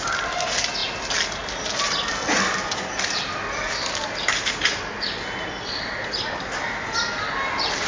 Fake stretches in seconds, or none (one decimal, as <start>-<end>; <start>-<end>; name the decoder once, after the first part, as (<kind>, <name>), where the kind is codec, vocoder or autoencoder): none